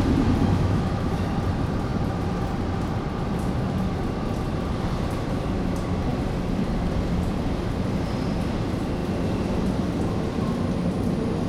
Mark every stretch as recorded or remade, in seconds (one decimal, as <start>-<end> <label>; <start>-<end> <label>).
0.0-0.4 recorded; 0.4-1.3 remade; 1.3-11.5 recorded